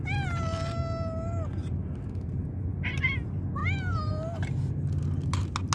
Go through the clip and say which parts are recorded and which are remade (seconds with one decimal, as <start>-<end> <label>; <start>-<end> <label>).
0.0-5.7 recorded